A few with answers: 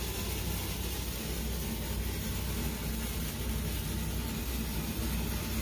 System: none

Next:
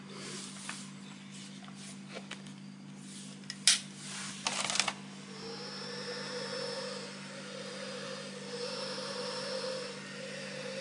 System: none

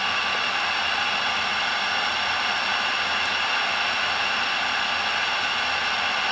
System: none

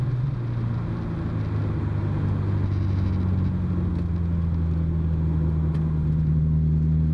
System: none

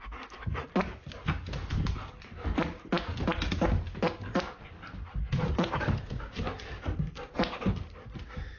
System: none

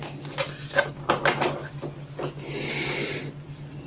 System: none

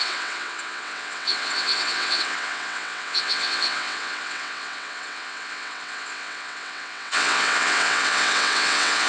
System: vocoder, WaveNeXt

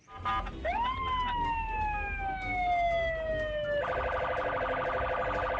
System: none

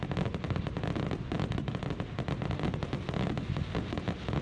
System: none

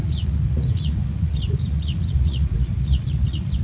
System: vocoder, Vocos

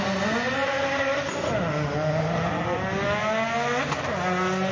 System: none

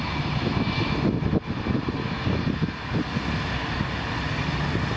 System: none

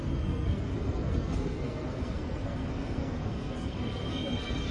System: codec, SNAC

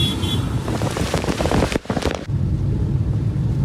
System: vocoder, BigVGAN v2